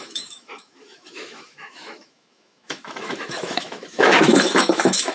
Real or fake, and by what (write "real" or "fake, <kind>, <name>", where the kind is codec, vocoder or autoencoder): fake, autoencoder, DAC-VAE